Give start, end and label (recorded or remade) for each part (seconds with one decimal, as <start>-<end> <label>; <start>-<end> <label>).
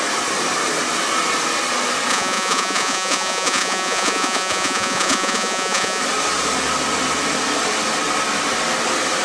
0.0-2.1 recorded; 2.1-6.0 remade; 6.0-9.2 recorded